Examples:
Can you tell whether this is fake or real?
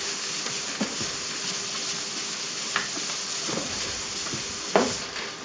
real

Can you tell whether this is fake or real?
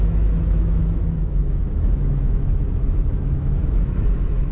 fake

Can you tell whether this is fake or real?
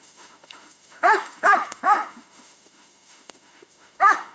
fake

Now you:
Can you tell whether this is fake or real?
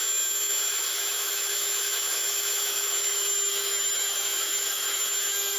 fake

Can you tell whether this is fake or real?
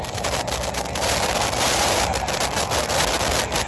real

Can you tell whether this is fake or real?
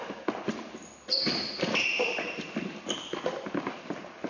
real